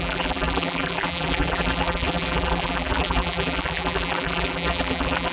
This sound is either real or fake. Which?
fake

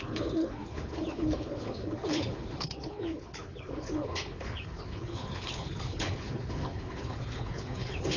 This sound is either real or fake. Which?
fake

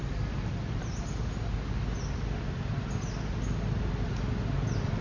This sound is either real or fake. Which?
real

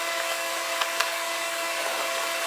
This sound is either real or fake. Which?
fake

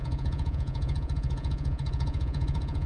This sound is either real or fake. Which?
fake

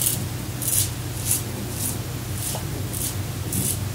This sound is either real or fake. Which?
real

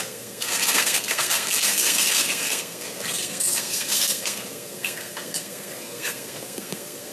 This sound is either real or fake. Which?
fake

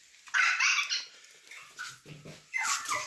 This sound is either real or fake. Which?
real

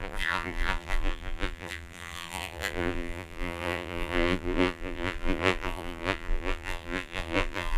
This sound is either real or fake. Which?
fake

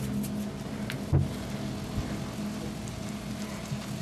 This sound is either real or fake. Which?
real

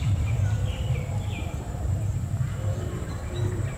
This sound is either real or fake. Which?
fake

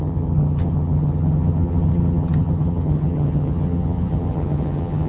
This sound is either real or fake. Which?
fake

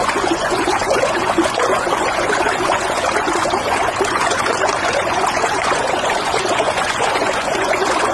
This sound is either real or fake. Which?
fake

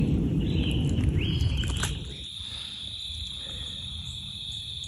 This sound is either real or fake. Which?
real